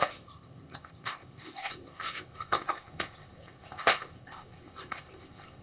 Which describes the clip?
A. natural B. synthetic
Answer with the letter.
B